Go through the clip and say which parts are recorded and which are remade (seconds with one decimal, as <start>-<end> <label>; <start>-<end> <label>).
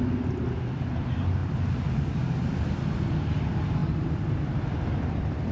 0.0-5.5 recorded